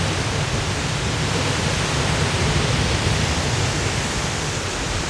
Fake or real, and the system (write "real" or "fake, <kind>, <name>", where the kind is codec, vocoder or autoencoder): real